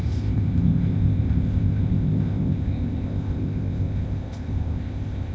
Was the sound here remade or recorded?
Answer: remade